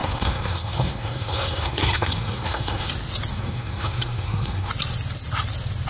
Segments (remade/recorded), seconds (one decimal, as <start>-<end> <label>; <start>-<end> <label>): 0.0-2.9 remade; 2.9-3.3 recorded; 3.3-4.7 remade; 4.7-5.9 recorded